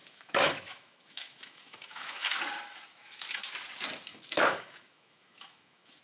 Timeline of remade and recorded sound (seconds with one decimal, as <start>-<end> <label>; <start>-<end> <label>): 0.0-2.4 remade; 2.4-2.9 recorded; 2.9-3.5 remade; 3.5-4.1 recorded; 4.1-6.0 remade